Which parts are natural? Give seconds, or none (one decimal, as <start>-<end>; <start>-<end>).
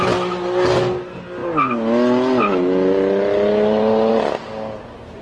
0.0-5.2